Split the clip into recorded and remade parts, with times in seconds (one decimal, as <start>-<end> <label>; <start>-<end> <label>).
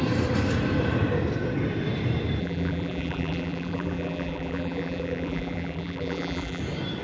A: 0.0-2.4 recorded; 2.4-6.6 remade; 6.6-7.0 recorded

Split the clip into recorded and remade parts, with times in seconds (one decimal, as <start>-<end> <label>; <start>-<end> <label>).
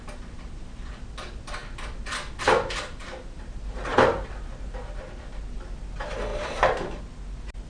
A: 0.0-3.9 recorded; 3.9-5.0 remade; 5.0-6.3 recorded; 6.3-7.0 remade; 7.0-7.7 recorded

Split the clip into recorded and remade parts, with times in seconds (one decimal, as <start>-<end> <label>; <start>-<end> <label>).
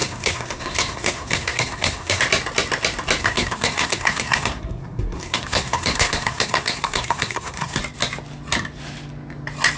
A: 0.0-2.2 remade; 2.2-3.2 recorded; 3.2-7.8 remade; 7.8-9.8 recorded